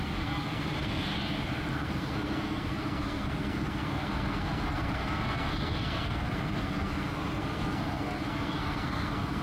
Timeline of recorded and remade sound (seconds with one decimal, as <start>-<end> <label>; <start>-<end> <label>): 0.0-1.1 remade; 1.1-1.7 recorded; 1.7-9.4 remade